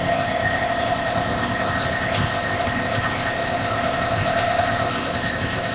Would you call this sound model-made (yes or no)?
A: yes